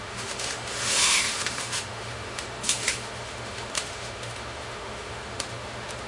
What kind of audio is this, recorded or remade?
remade